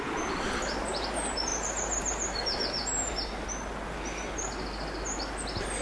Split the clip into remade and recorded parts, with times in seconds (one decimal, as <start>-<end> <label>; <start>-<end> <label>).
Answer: 0.0-5.8 recorded